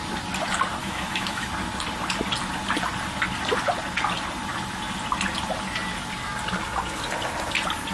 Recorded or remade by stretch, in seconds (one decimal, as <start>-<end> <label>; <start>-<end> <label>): 0.0-0.8 recorded; 0.8-1.5 remade; 1.5-7.9 recorded